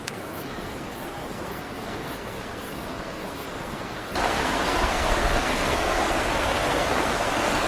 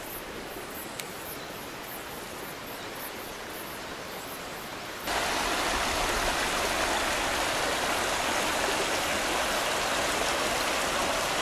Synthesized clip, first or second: first